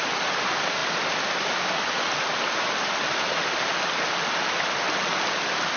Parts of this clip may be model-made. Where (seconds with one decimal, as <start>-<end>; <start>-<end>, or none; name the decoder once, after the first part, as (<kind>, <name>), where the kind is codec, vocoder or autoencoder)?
0.8-1.7 (vocoder, BigVGAN v2)